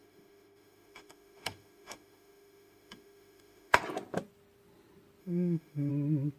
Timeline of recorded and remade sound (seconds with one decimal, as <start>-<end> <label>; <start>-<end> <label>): 0.0-3.8 remade; 3.8-5.2 recorded; 5.2-5.9 remade; 5.9-6.4 recorded